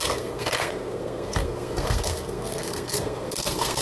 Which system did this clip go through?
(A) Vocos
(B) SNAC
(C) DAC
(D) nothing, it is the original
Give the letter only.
B